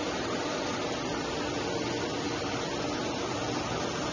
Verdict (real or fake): real